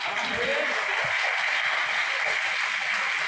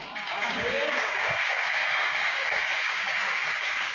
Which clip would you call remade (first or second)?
second